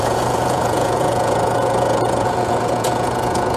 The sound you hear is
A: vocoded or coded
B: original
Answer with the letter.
A